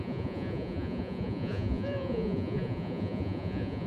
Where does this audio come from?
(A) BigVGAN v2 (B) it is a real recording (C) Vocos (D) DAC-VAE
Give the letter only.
C